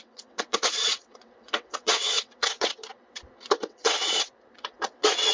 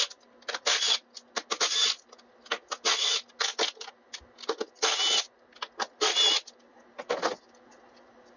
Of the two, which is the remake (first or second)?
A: first